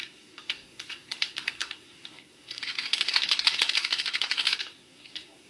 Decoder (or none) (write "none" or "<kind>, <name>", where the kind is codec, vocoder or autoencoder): codec, SNAC